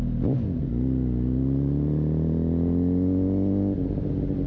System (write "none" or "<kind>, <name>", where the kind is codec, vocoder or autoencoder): none